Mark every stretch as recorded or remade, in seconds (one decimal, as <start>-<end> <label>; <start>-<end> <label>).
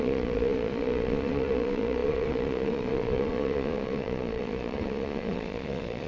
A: 0.0-6.1 remade